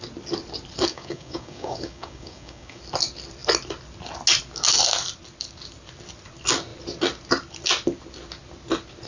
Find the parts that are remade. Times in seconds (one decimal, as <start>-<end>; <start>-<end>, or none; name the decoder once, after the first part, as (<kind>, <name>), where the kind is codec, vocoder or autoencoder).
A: 0.9-2.8 (codec, DAC)